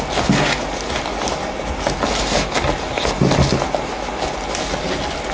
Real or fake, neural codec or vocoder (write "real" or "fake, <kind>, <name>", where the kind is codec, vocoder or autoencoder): real